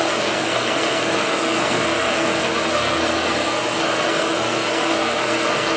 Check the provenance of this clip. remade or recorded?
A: remade